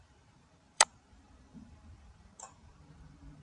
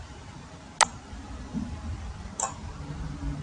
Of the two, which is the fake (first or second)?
first